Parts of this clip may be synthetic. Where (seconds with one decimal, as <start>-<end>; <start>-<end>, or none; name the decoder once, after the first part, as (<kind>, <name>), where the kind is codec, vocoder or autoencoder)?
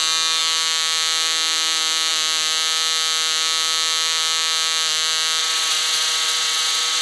5.4-7.0 (vocoder, WaveNeXt)